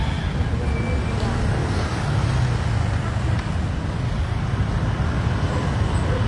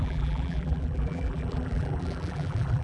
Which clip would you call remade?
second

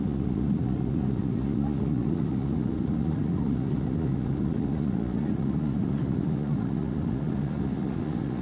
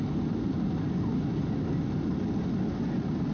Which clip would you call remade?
first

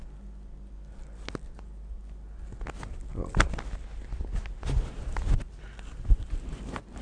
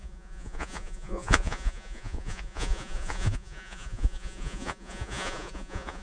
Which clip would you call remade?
second